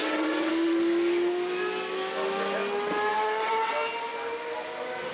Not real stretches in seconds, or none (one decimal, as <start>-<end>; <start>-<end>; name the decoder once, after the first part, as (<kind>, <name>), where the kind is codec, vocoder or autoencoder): 0.0-0.5 (vocoder, WaveNeXt); 3.1-3.7

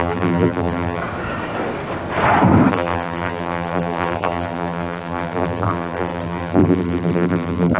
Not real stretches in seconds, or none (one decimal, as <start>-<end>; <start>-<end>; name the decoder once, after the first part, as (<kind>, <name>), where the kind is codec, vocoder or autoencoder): 0.0-1.0 (vocoder, BigVGAN v2); 2.7-7.8

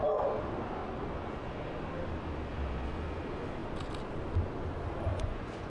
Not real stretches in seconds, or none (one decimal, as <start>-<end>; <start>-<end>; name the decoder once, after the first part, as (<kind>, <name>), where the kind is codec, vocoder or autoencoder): 5.1-5.7 (vocoder, Vocos)

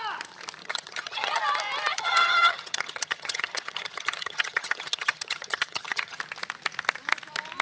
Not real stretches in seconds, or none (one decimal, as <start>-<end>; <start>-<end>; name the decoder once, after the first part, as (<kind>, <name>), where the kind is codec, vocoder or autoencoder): 0.6-1.4 (vocoder, HiFi-GAN); 1.9-6.2